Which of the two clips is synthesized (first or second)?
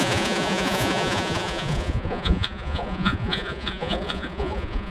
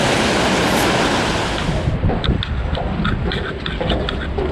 first